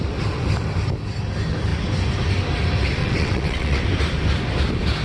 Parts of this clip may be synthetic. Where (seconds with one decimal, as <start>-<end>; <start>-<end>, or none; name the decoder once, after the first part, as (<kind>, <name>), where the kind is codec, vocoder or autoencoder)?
3.0-3.8 (vocoder, WaveNeXt)